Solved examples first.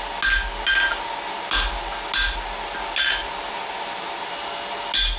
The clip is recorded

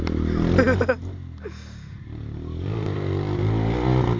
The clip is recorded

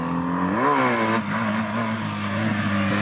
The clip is recorded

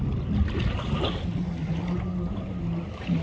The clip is recorded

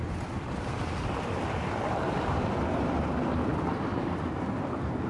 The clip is recorded